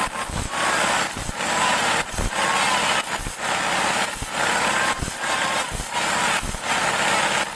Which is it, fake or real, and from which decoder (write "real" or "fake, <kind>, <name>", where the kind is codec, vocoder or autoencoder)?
real